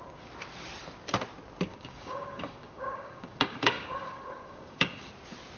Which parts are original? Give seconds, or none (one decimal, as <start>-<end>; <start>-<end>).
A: 0.0-1.7; 5.1-5.6